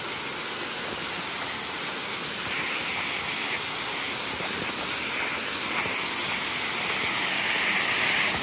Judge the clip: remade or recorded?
recorded